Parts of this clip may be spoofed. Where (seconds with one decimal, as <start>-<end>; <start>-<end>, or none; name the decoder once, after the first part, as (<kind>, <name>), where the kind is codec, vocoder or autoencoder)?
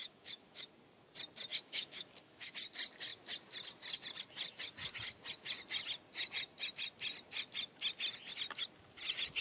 0.0-0.7 (autoencoder, DAC-VAE); 1.5-2.5